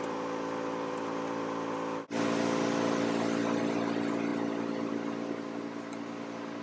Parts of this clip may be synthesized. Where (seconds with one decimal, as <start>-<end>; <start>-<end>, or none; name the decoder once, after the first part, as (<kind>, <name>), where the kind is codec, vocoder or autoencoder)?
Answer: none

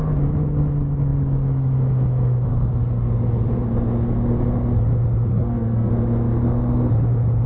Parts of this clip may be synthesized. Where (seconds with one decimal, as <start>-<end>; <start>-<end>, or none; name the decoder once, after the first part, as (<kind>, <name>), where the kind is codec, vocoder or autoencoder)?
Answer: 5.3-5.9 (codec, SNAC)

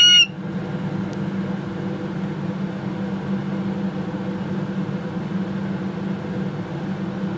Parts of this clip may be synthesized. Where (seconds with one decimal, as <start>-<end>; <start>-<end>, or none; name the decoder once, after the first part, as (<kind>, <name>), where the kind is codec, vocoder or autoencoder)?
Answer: none

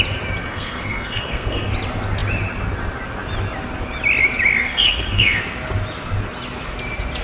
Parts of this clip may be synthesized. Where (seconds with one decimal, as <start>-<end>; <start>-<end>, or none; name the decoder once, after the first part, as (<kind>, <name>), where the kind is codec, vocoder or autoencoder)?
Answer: 0.5-1.7 (codec, SNAC); 4.6-5.4

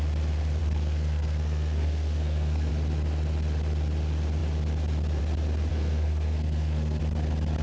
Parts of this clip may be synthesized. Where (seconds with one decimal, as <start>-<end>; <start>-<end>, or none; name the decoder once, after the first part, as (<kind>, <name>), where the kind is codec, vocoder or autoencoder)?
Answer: 0.6-2.7 (codec, SNAC); 5.7-7.0

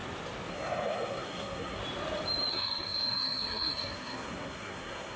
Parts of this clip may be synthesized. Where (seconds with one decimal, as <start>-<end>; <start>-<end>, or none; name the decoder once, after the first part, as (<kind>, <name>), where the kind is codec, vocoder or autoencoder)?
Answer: 0.5-1.8 (codec, SNAC); 2.5-5.2

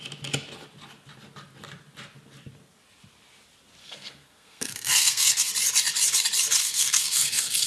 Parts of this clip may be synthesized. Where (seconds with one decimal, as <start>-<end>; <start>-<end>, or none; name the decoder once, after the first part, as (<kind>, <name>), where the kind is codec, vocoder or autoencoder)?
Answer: 3.8-5.5 (codec, SNAC); 6.6-7.7

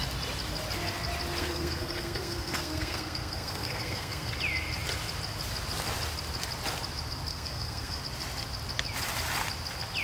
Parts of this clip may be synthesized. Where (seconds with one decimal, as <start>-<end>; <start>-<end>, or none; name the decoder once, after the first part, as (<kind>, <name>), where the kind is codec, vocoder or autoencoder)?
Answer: 1.4-4.3 (codec, SNAC); 7.3-8.0